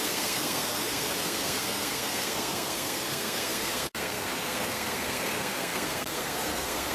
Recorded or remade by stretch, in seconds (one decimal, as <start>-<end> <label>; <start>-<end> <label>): 0.0-6.9 remade